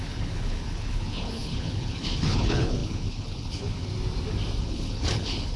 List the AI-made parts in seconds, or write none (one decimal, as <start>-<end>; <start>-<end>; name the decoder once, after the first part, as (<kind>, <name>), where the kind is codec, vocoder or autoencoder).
0.0-3.9 (codec, HILCodec); 4.6-5.6